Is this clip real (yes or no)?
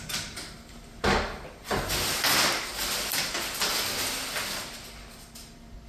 yes